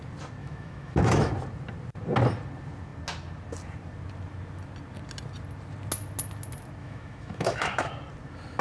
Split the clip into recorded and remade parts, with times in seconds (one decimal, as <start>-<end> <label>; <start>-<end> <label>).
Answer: 0.0-0.4 recorded; 0.4-1.3 remade; 1.3-6.8 recorded; 6.8-7.9 remade; 7.9-8.6 recorded